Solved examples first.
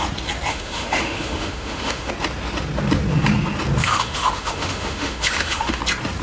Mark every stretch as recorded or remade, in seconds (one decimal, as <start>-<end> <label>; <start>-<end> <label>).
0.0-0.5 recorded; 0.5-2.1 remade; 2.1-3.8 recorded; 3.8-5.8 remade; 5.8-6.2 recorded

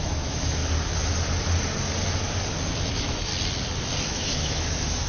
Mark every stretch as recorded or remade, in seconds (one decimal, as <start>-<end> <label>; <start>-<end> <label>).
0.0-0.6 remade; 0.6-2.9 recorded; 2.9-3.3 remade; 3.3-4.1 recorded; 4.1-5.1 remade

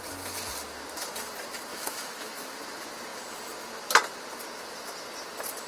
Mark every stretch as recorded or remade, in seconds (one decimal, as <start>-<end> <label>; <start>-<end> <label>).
0.0-1.7 recorded; 1.7-2.5 remade; 2.5-5.7 recorded

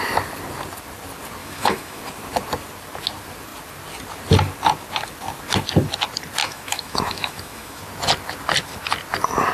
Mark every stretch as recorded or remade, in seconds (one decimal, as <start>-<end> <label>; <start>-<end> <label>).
0.0-1.4 recorded; 1.4-2.0 remade; 2.0-6.4 recorded; 6.4-7.8 remade; 7.8-9.5 recorded